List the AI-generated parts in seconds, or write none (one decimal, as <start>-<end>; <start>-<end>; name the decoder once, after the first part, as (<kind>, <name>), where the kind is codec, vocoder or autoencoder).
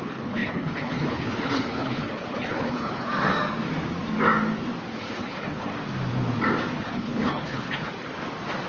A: 0.0-3.1 (codec, HILCodec); 5.0-5.7; 6.8-7.9